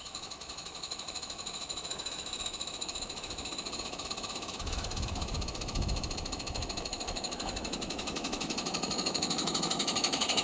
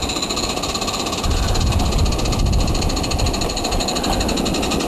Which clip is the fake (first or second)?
first